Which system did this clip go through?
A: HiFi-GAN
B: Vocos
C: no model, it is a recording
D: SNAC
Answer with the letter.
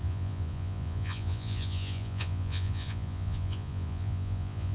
B